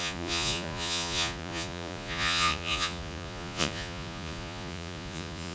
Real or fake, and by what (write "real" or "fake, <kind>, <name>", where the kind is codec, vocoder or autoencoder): fake, vocoder, Vocos